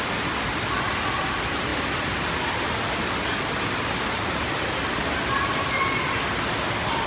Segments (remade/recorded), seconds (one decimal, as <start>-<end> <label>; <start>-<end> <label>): 0.0-7.1 recorded